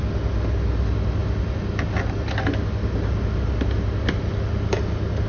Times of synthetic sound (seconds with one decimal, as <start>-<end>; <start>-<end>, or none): none